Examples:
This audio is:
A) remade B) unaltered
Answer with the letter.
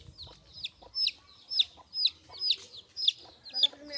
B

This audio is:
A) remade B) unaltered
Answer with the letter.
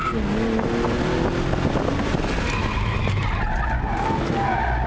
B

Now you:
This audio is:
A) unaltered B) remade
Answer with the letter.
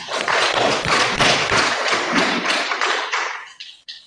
B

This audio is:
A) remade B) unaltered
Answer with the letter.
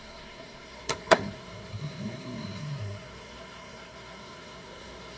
A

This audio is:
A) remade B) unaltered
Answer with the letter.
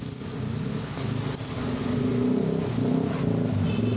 B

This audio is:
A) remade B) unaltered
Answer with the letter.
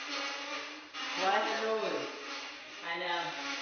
B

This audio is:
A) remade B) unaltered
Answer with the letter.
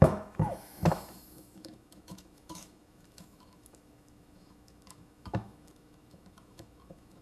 A